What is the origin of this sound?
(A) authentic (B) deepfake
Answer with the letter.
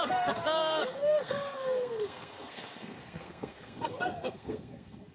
B